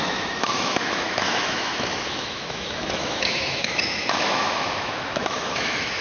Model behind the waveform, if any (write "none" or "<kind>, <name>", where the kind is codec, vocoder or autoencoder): autoencoder, DAC-VAE